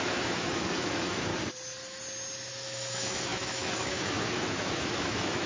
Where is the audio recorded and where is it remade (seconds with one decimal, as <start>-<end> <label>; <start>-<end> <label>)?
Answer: 0.0-1.3 remade; 1.3-2.5 recorded; 2.5-5.5 remade